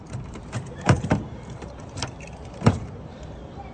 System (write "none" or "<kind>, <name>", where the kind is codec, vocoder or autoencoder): vocoder, BigVGAN v2